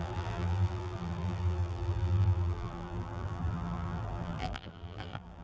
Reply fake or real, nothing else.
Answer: fake